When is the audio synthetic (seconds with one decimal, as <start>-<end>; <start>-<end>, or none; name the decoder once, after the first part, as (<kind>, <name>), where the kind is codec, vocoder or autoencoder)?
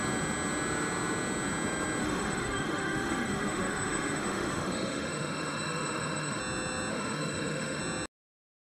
2.0-6.4 (autoencoder, DAC-VAE); 6.9-7.8